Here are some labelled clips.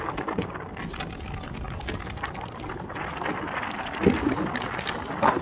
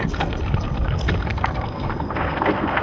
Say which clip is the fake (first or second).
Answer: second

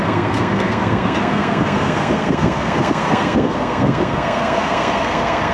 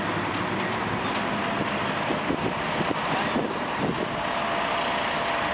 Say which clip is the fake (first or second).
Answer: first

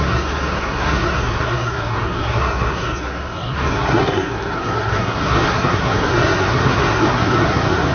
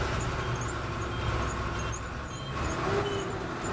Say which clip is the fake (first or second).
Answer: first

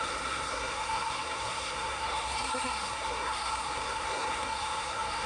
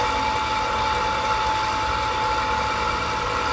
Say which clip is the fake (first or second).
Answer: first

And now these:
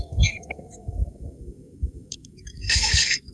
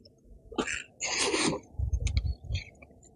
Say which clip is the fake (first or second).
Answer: first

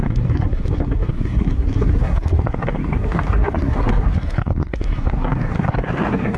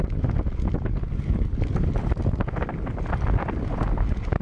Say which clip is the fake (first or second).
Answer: first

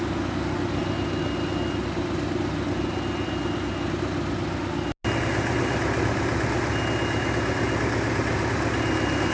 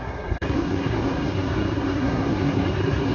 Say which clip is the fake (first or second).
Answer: second